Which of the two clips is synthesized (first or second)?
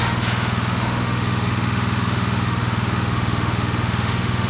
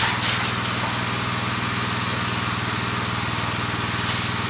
first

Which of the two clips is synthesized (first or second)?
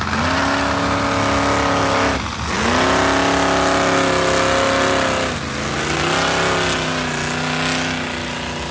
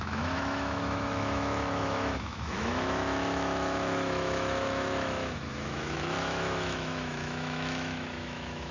second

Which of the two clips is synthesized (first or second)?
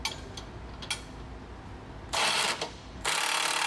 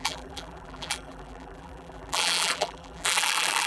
second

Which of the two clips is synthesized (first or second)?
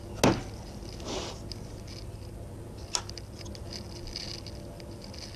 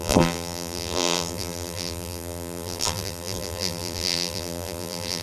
second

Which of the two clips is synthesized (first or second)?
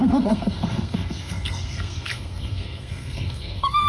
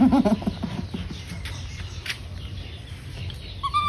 first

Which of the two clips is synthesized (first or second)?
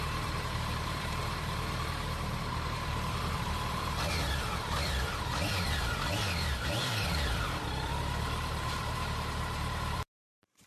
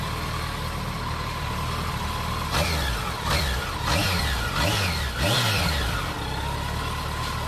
first